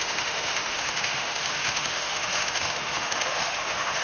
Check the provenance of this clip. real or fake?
fake